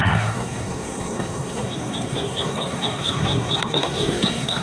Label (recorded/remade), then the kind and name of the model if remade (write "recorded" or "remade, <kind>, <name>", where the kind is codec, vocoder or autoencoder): remade, codec, SNAC